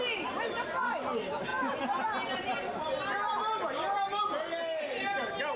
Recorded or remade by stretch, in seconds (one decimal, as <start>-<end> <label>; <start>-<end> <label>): 0.0-5.6 recorded